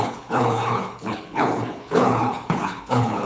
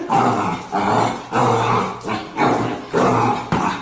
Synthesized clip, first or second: first